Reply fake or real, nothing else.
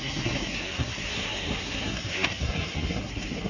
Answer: fake